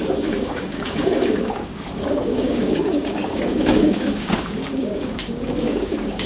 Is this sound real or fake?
fake